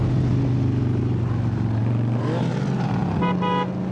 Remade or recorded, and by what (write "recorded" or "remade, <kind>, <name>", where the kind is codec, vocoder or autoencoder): recorded